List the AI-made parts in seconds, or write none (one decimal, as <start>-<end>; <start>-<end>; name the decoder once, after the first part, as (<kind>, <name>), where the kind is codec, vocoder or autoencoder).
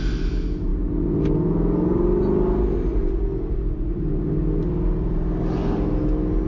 none